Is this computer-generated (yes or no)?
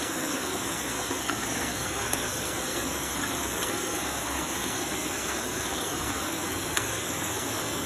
yes